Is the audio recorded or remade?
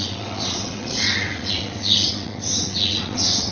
remade